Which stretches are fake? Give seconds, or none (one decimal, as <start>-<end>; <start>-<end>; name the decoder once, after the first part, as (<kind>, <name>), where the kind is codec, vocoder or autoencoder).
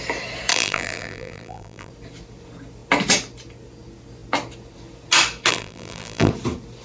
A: 0.5-1.9 (vocoder, BigVGAN v2); 5.5-6.3